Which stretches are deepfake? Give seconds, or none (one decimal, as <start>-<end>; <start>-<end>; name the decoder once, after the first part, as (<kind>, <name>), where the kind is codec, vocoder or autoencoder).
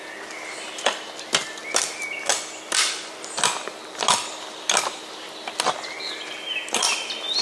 none